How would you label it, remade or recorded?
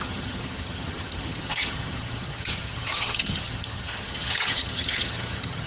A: remade